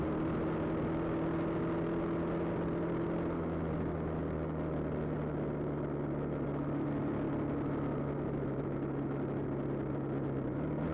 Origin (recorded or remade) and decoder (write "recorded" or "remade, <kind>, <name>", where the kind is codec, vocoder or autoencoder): recorded